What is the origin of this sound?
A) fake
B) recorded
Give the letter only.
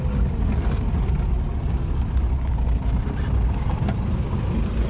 B